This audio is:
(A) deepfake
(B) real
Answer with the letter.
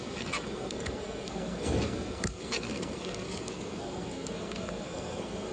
A